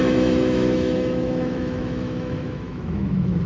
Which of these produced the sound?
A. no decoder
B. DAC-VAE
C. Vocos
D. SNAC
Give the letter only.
B